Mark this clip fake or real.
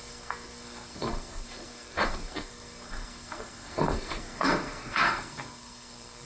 fake